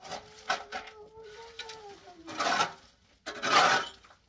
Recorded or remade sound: recorded